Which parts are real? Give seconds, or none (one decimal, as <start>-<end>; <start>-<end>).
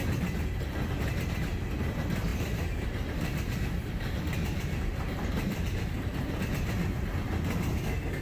0.0-2.3; 6.4-8.2